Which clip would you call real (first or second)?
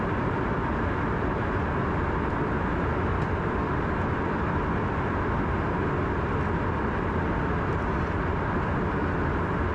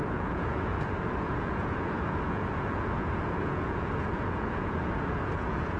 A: first